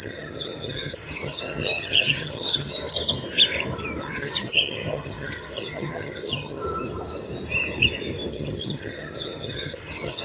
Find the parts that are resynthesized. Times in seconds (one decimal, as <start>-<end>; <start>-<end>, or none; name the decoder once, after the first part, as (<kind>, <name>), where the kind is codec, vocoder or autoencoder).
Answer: 0.0-2.8 (vocoder, HiFi-GAN); 4.0-6.6; 8.3-10.2